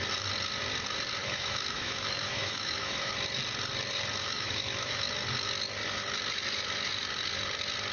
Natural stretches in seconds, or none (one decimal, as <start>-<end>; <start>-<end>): 0.0-1.2; 3.1-4.2; 5.1-7.9